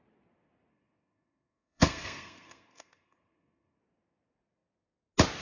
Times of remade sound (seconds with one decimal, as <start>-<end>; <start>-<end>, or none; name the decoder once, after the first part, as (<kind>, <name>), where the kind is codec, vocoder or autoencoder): 0.7-3.8 (codec, SNAC)